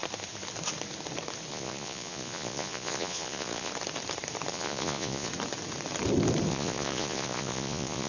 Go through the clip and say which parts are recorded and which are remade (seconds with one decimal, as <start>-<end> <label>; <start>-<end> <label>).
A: 0.0-1.5 recorded; 1.5-3.7 remade; 3.7-4.5 recorded; 4.5-5.3 remade; 5.3-6.5 recorded; 6.5-8.1 remade